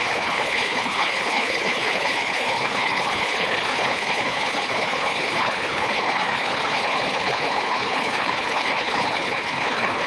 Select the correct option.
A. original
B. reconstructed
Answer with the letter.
B